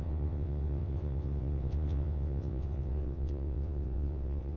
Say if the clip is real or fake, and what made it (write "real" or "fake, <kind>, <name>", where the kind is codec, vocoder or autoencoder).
fake, vocoder, WaveNeXt